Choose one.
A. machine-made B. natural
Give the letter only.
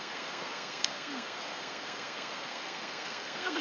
A